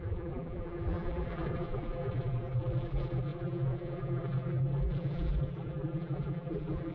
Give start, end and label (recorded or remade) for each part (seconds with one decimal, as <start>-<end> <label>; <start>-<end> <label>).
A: 0.0-6.9 remade